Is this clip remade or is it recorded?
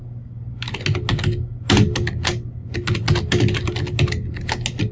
recorded